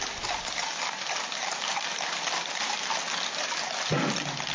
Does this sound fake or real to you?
real